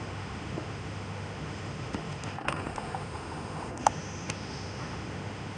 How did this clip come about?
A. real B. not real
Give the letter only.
B